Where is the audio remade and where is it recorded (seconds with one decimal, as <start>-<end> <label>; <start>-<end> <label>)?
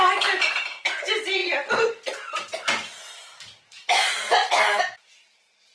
0.0-5.7 remade